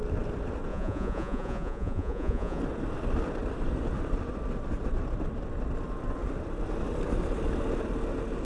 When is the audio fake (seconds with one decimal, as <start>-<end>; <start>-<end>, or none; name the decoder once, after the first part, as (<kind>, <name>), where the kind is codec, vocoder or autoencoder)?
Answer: 0.7-2.6 (vocoder, Vocos)